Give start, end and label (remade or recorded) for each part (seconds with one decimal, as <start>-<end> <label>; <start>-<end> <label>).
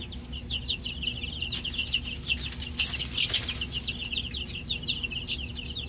0.0-5.9 recorded